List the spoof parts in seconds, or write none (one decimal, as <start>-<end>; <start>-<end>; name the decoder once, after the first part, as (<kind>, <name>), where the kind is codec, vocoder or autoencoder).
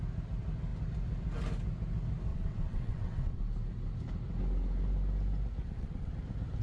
2.3-3.4 (vocoder, WaveNeXt); 5.6-6.1